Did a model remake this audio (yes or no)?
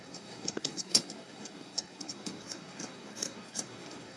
yes